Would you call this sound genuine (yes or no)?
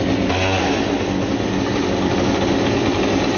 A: yes